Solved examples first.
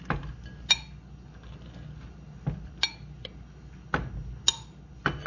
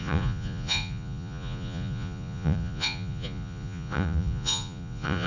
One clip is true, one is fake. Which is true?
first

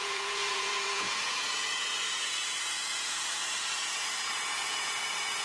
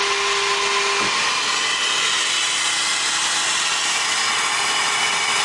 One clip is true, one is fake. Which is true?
second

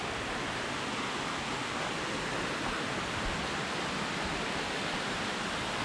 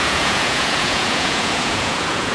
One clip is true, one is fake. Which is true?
first